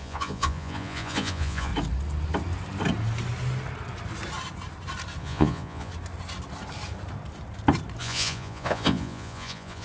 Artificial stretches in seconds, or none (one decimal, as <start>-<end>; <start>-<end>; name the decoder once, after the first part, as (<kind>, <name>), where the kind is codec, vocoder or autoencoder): 0.0-1.7 (vocoder, Vocos); 5.2-5.9; 8.0-9.8